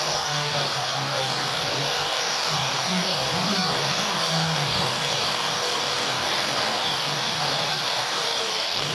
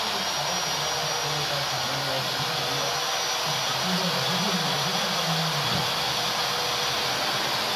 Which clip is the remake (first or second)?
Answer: first